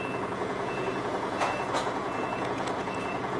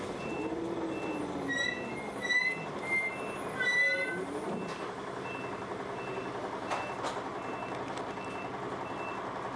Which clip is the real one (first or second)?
second